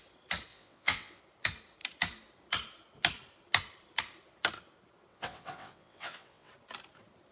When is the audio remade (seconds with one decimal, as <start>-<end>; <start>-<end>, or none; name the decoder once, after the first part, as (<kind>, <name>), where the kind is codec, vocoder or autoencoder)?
0.5-1.2 (vocoder, WaveNeXt); 5.1-6.5